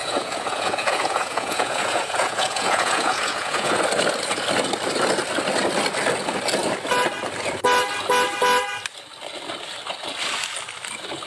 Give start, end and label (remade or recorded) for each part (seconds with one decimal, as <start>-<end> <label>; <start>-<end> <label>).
0.0-3.8 remade; 3.8-11.3 recorded